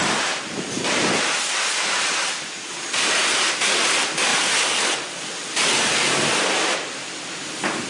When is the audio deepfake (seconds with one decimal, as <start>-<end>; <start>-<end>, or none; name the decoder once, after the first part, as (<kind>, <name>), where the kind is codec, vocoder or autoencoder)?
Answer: none

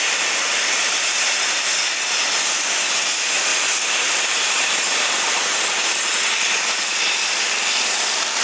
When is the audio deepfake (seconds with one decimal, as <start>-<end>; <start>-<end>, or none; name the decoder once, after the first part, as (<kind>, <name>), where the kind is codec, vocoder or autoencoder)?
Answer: 0.0-8.4 (vocoder, BigVGAN v2)

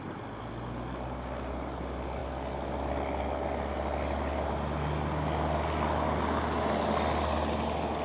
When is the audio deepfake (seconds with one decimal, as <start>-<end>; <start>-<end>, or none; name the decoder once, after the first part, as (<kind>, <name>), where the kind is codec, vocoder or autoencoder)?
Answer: none

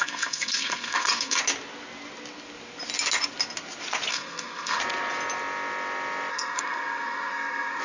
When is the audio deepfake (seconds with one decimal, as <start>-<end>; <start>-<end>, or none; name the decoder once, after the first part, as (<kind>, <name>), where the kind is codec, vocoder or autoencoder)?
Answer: 0.0-1.4 (codec, SNAC); 4.1-4.8; 6.3-7.8

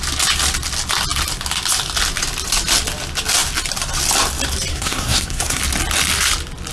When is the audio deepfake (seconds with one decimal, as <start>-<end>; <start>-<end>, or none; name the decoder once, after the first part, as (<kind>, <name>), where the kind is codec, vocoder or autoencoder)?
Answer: 4.7-5.6 (codec, SNAC)

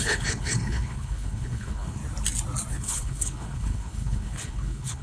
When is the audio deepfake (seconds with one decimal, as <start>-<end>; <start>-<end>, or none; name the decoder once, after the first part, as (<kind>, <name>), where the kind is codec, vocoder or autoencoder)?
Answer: 0.0-2.0 (codec, HILCodec); 2.7-5.0